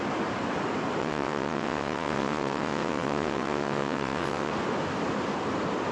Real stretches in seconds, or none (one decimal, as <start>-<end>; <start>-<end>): 0.0-1.0; 4.5-5.9